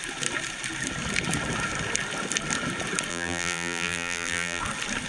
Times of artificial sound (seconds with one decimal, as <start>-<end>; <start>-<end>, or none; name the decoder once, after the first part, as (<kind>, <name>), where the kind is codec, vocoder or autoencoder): 3.1-4.6 (vocoder, BigVGAN v2)